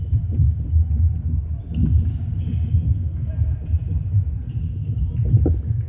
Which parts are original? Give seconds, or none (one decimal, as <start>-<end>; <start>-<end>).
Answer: 0.0-2.8; 3.3-5.9